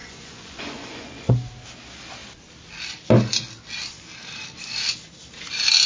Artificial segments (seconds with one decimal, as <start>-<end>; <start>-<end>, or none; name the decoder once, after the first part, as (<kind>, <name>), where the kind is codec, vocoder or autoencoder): 0.0-1.3 (vocoder, Vocos)